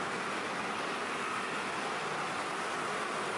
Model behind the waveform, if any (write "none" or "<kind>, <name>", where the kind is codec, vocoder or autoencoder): none